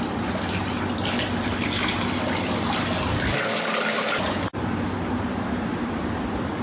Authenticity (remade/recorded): recorded